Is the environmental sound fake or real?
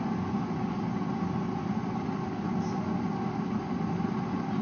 real